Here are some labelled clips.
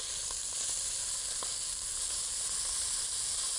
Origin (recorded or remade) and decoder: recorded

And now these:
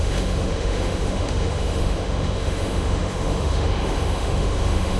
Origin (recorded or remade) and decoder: remade, autoencoder, DAC-VAE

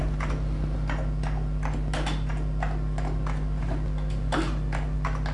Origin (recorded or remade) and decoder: recorded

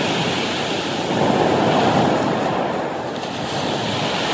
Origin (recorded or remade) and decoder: recorded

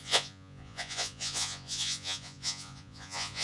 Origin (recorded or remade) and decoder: remade, vocoder, Vocos